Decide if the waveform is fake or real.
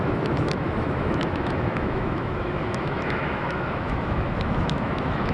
fake